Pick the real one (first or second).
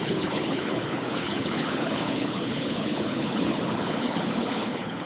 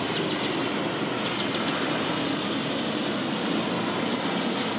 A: second